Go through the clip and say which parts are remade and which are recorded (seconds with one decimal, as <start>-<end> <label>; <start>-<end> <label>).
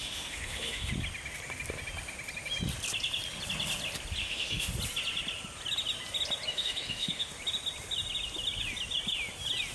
0.0-0.9 remade; 0.9-4.2 recorded; 4.2-4.7 remade; 4.7-6.5 recorded; 6.5-7.3 remade; 7.3-9.7 recorded